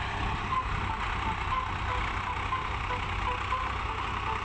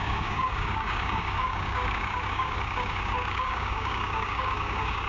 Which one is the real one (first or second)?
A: first